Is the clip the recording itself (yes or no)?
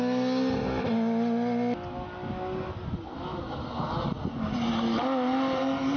yes